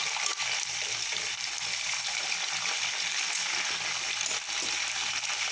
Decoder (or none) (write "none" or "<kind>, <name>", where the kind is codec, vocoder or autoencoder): none